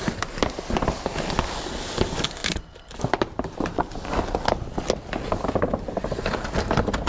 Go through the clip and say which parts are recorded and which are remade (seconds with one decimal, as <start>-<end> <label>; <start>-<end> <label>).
0.0-2.4 recorded; 2.4-3.9 remade; 3.9-7.1 recorded